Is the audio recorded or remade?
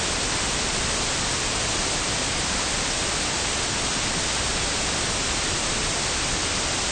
recorded